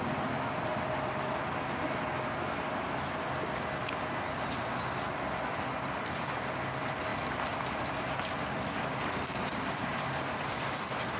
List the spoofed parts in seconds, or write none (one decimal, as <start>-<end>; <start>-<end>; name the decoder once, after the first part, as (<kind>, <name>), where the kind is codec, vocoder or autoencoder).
none